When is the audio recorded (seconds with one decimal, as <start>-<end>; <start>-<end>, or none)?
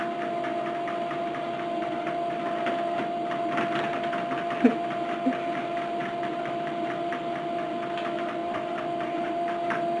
0.0-1.2; 4.7-6.0; 7.7-8.4